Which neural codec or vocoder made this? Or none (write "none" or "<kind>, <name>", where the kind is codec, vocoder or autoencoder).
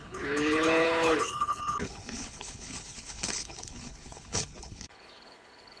codec, HILCodec